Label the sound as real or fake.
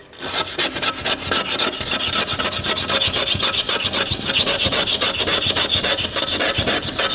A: real